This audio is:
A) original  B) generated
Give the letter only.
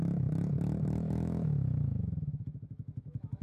B